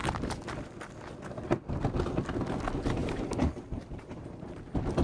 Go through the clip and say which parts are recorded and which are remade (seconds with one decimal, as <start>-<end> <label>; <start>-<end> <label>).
0.0-3.0 recorded; 3.0-4.6 remade; 4.6-5.0 recorded